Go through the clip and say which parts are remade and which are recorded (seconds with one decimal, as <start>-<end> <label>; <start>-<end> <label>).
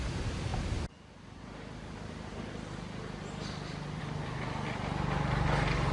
0.0-5.9 recorded